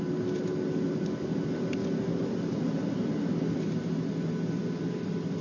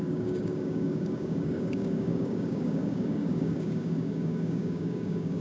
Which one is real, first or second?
first